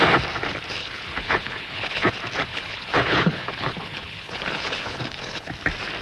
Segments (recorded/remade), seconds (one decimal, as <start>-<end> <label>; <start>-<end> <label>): 0.0-0.8 recorded; 0.8-2.1 remade; 2.1-2.5 recorded; 2.5-5.5 remade; 5.5-6.0 recorded